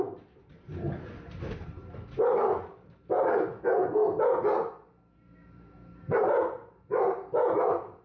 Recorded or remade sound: recorded